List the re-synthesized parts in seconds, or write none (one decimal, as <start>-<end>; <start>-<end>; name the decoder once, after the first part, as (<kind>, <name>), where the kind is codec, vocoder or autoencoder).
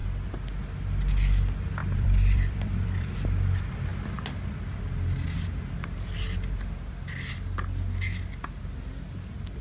1.8-3.1 (vocoder, BigVGAN v2)